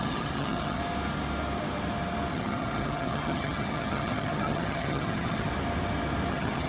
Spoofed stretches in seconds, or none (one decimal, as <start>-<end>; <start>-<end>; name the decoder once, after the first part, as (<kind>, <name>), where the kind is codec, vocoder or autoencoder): 0.0-0.8 (vocoder, HiFi-GAN); 2.3-5.5; 6.3-6.7